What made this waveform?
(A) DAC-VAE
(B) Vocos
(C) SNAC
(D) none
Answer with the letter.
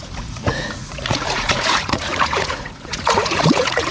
B